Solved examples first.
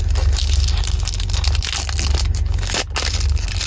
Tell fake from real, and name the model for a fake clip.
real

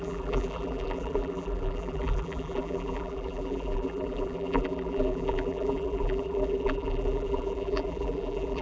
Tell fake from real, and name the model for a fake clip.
fake, vocoder, BigVGAN v2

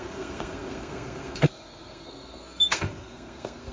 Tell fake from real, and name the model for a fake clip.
fake, codec, SNAC